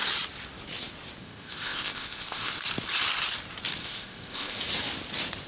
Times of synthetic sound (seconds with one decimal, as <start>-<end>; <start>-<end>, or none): 1.2-2.5; 3.8-4.6